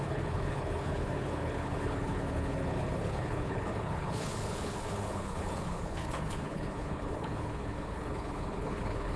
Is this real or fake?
fake